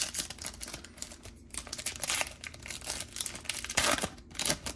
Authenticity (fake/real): real